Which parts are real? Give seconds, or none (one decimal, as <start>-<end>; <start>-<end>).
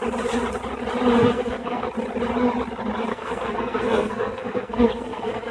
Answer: 0.0-1.2; 1.9-3.1